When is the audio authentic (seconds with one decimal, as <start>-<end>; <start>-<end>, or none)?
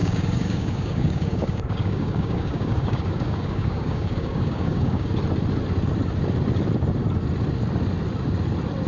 5.1-8.9